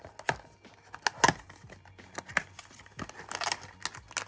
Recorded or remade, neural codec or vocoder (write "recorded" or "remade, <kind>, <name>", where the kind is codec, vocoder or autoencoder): recorded